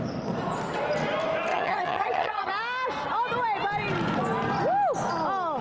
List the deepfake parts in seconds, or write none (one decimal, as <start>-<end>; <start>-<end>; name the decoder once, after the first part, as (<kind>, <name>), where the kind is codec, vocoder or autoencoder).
1.5-2.5 (vocoder, HiFi-GAN)